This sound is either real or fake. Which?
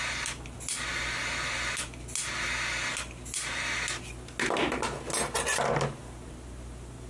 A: real